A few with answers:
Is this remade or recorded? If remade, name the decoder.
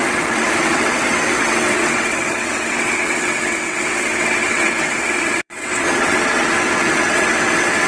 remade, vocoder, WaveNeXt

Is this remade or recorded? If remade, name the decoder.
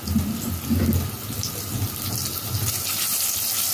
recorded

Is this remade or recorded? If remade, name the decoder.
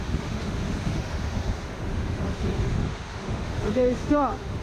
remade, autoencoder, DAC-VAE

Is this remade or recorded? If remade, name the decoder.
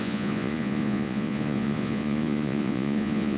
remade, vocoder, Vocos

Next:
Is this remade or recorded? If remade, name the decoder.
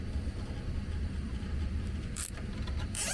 remade, vocoder, BigVGAN v2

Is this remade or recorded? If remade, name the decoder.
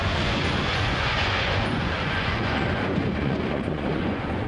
remade, vocoder, Vocos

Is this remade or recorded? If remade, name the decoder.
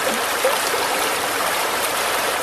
remade, vocoder, BigVGAN v2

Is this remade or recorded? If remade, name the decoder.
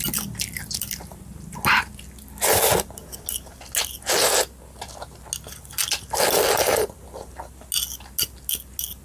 recorded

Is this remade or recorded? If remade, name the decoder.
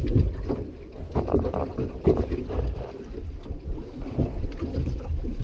recorded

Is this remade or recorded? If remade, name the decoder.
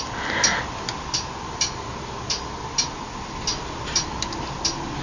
recorded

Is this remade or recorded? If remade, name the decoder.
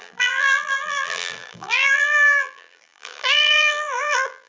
remade, vocoder, BigVGAN v2